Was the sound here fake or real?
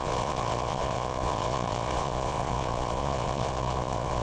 fake